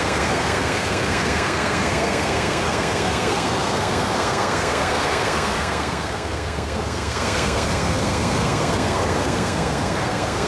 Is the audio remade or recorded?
remade